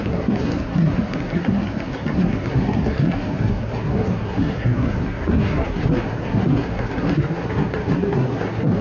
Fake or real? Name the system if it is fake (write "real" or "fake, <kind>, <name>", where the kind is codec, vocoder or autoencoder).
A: fake, codec, SNAC